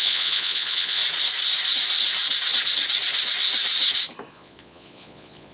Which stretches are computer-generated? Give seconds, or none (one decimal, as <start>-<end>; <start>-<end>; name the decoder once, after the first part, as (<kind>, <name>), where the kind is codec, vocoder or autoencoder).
0.0-1.0 (vocoder, Vocos); 4.3-5.5